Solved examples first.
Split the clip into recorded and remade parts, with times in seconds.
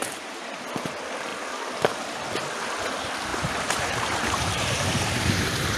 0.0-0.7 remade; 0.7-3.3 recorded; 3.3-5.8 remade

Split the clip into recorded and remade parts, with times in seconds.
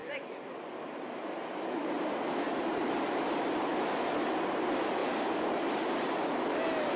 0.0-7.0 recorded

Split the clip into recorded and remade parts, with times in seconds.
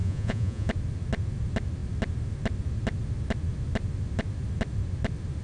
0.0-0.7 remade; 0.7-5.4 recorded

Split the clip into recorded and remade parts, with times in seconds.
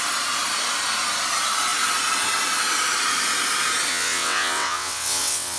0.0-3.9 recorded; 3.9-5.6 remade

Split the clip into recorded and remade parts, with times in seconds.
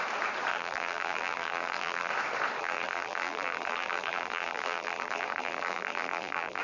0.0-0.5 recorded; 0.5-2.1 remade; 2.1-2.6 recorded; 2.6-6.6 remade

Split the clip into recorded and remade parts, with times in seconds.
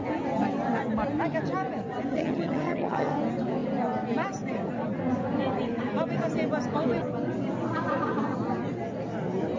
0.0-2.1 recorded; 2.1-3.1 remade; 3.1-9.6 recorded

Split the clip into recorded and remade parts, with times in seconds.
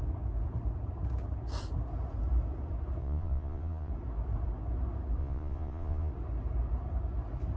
0.0-3.0 recorded; 3.0-3.9 remade; 3.9-5.2 recorded; 5.2-6.1 remade; 6.1-7.6 recorded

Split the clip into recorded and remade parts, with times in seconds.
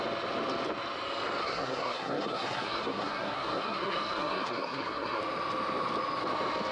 0.0-1.4 recorded; 1.4-5.2 remade; 5.2-6.7 recorded